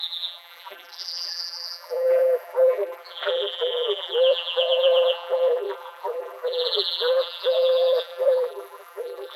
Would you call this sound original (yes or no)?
no